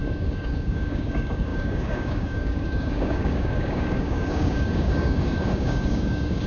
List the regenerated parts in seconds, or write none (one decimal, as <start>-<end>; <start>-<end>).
0.0-6.5